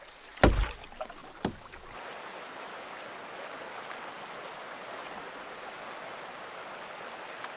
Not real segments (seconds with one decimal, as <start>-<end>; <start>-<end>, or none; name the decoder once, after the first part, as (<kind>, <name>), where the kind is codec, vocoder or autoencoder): 5.0-5.8 (vocoder, Vocos)